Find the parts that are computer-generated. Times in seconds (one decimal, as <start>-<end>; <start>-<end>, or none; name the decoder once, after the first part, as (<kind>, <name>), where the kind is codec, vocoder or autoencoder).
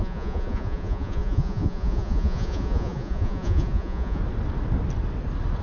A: 0.0-4.2 (vocoder, Vocos)